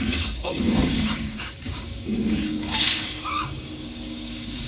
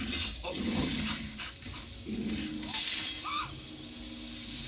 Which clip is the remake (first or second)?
first